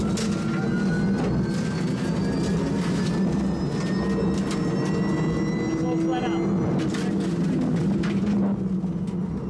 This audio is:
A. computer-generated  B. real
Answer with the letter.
B